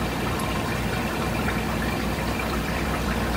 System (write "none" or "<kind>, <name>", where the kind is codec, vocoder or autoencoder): vocoder, BigVGAN v2